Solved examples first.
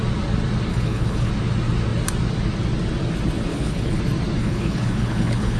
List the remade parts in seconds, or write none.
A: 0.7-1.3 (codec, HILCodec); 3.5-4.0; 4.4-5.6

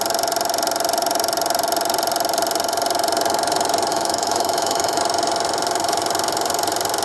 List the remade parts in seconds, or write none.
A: 3.9-5.0 (autoencoder, DAC-VAE)

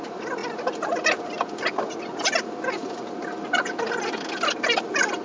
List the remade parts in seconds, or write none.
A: none